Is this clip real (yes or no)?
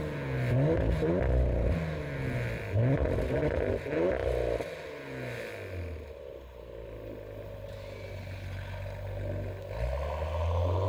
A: yes